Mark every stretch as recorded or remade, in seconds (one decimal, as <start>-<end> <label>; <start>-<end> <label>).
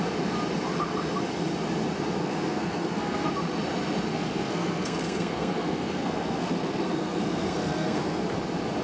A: 0.0-2.2 recorded; 2.2-3.3 remade; 3.3-4.1 recorded; 4.1-8.2 remade; 8.2-8.8 recorded